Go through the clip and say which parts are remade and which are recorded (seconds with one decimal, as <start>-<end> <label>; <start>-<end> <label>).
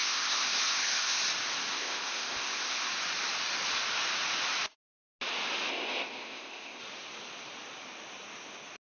0.0-1.2 remade; 1.2-1.7 recorded; 1.7-2.9 remade; 2.9-5.7 recorded; 5.7-6.8 remade; 6.8-9.0 recorded